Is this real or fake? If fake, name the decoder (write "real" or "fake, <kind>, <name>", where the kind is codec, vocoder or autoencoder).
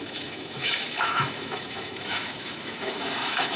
fake, autoencoder, DAC-VAE